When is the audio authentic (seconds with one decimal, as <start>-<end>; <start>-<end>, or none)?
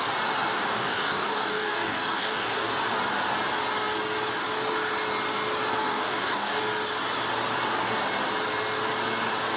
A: 0.0-0.5; 2.7-5.9; 6.6-9.6